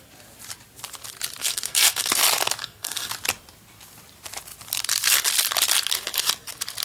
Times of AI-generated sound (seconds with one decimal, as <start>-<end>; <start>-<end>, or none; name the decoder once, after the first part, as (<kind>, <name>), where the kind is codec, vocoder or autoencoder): 1.4-2.1 (codec, SNAC); 2.6-3.1